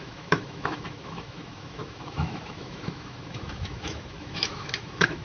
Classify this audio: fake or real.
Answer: fake